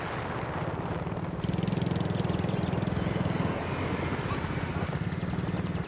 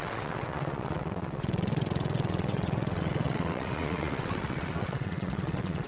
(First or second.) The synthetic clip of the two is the second